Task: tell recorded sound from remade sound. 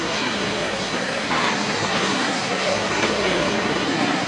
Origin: remade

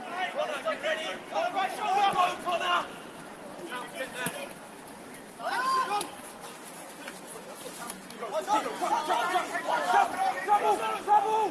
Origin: recorded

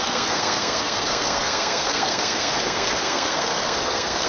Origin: remade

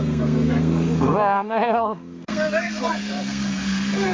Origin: remade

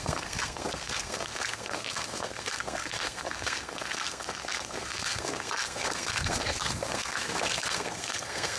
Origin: remade